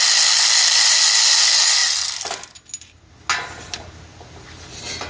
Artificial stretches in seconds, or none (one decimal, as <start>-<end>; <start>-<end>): none